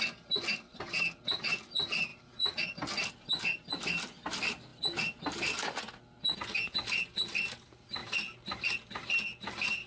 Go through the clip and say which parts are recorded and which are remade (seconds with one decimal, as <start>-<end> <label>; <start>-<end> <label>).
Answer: 0.0-9.9 recorded